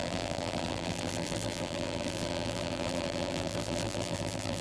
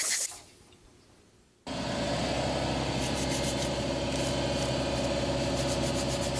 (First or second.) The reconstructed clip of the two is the first